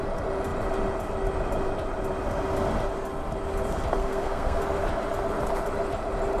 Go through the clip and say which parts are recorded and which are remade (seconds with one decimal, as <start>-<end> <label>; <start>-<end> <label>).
0.0-4.0 recorded; 4.0-4.6 remade; 4.6-6.4 recorded